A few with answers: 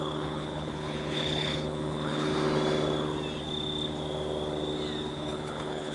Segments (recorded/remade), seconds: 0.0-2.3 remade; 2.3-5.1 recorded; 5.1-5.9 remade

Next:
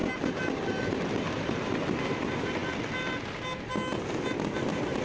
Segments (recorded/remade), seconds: 0.0-5.0 recorded

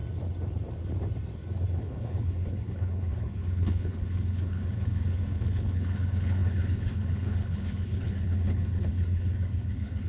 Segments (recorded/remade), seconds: 0.0-1.8 recorded; 1.8-10.1 remade

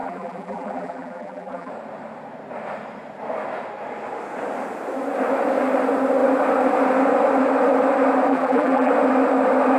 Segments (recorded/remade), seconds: 0.0-1.7 remade; 1.7-8.3 recorded; 8.3-8.9 remade; 8.9-9.8 recorded

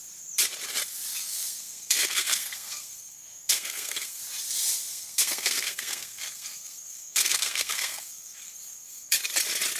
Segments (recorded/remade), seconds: 0.0-1.1 recorded; 1.1-4.2 remade; 4.2-4.9 recorded; 4.9-9.2 remade; 9.2-9.8 recorded

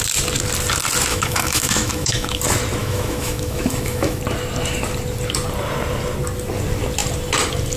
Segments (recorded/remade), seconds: 0.0-1.1 recorded; 1.1-2.4 remade; 2.4-2.8 recorded; 2.8-4.2 remade; 4.2-7.8 recorded

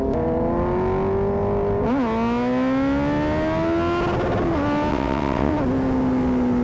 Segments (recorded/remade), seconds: 0.0-4.9 recorded; 4.9-5.5 remade; 5.5-6.6 recorded

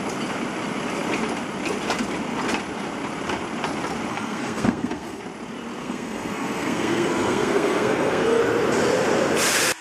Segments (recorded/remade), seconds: 0.0-4.1 recorded; 4.1-5.2 remade; 5.2-5.8 recorded; 5.8-8.4 remade; 8.4-9.8 recorded